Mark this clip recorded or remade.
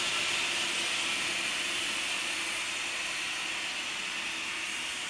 recorded